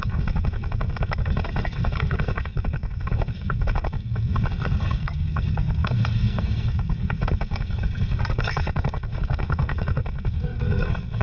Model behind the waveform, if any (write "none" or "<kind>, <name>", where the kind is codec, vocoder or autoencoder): codec, SNAC